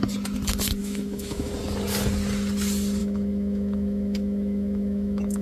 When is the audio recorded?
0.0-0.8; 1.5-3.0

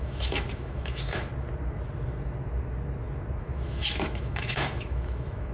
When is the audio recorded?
1.3-3.4